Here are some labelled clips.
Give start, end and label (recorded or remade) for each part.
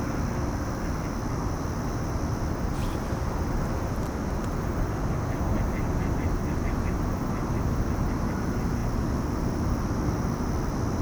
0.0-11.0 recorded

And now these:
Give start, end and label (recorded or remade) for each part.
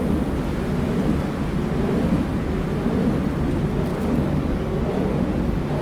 0.0-3.9 recorded; 3.9-4.8 remade; 4.8-5.8 recorded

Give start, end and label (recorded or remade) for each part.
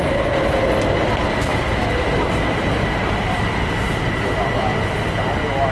0.0-5.7 recorded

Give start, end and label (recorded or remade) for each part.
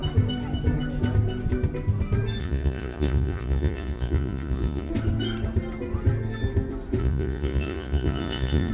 0.0-2.4 recorded; 2.4-4.9 remade; 4.9-7.0 recorded; 7.0-8.7 remade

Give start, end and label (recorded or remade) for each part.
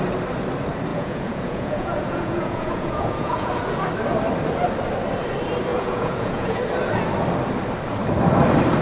0.0-0.9 recorded; 0.9-3.5 remade; 3.5-5.7 recorded; 5.7-6.6 remade; 6.6-8.8 recorded